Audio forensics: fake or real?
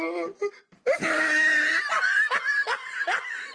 real